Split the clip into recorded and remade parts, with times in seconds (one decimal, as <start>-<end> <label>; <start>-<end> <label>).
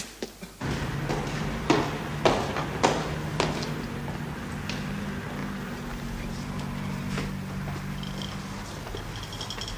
0.0-9.8 recorded